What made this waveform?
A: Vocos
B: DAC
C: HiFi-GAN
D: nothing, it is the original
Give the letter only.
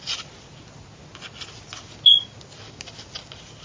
D